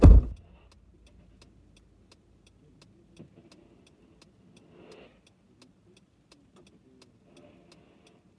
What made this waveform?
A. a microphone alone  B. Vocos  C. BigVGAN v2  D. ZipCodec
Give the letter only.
A